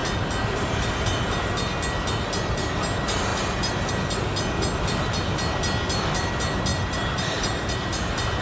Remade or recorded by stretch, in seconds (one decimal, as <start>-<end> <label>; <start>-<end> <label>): 0.0-3.3 recorded; 3.3-3.9 remade; 3.9-6.7 recorded; 6.7-7.9 remade; 7.9-8.4 recorded